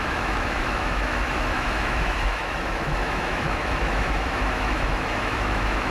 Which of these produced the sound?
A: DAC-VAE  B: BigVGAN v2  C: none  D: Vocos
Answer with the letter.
A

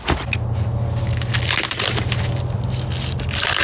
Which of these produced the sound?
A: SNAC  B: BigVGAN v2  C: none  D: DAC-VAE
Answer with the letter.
C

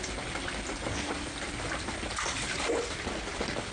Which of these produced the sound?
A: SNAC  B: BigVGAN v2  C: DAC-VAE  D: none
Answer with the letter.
D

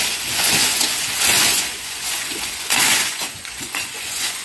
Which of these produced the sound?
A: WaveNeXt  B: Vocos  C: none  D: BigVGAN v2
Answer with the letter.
B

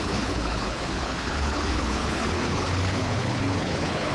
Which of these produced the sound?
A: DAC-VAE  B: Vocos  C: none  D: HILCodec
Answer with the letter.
D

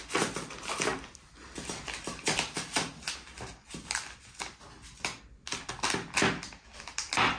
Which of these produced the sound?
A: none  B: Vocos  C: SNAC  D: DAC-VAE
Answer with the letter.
A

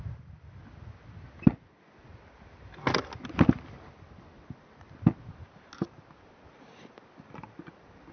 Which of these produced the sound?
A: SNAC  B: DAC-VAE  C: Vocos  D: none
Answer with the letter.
D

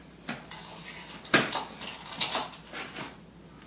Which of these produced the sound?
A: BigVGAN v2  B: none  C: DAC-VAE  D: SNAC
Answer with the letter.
B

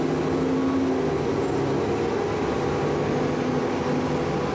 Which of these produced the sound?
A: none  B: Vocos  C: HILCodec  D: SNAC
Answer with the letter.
A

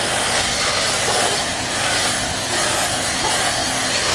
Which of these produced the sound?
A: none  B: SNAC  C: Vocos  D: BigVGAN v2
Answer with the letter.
A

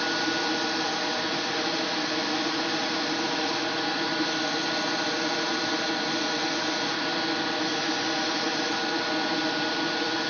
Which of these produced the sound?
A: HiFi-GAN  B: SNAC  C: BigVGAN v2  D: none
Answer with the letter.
D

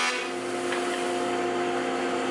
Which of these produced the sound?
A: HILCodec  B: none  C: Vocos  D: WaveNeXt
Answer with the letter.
B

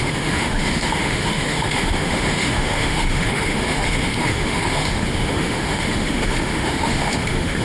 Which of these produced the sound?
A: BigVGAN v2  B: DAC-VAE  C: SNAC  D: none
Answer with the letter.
B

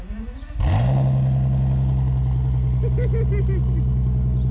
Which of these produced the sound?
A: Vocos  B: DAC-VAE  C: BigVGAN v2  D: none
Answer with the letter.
D